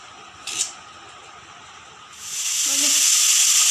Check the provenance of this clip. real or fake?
real